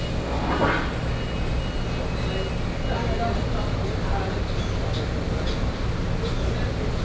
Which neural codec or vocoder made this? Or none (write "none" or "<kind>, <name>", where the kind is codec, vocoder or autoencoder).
none